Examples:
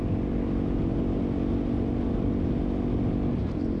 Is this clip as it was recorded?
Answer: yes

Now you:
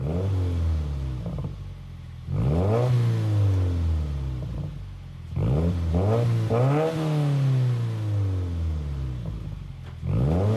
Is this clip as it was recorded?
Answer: yes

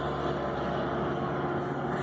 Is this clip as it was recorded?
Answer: yes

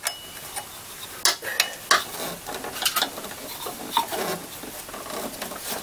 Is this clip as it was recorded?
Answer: yes